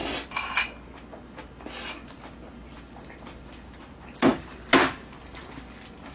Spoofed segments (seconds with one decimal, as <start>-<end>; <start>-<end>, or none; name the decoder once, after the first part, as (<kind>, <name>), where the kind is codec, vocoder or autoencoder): none